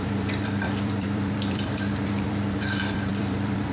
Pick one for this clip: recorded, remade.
remade